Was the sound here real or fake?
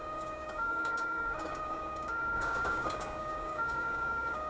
fake